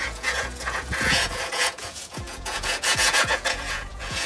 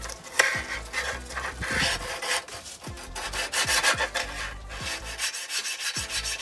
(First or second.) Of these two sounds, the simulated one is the first